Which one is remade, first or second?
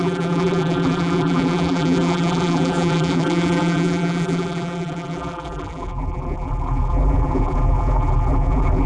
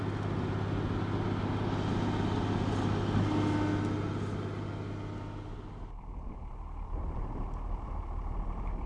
first